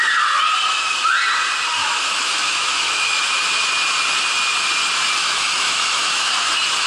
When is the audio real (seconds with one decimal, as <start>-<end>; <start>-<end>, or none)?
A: 0.0-1.8; 3.2-5.2; 6.3-6.9